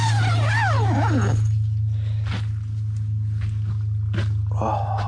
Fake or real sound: real